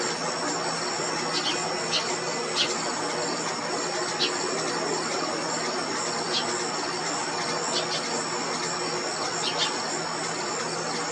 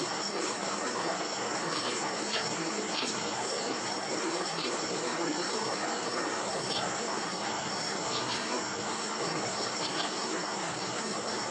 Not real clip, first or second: second